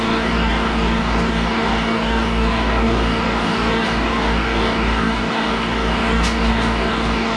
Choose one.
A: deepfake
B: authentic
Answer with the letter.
A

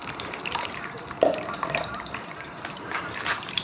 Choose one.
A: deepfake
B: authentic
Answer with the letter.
A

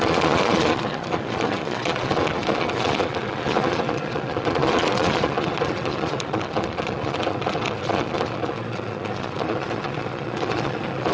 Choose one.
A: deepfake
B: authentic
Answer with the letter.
A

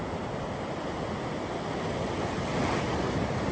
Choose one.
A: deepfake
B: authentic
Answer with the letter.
B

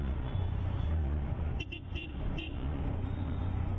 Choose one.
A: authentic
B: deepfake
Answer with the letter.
B